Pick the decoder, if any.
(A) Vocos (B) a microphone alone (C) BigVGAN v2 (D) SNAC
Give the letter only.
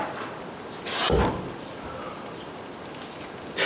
B